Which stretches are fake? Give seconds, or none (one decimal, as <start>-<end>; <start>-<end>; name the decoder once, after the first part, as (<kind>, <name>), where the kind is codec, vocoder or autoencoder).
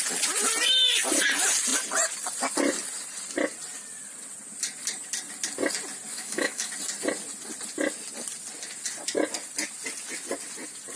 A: 6.1-6.7 (autoencoder, DAC-VAE)